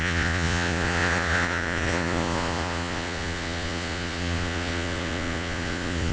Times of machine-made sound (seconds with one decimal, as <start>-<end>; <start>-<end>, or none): 0.0-6.1